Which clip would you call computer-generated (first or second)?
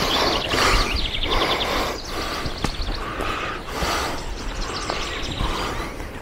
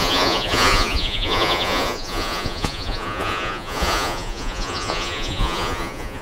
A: second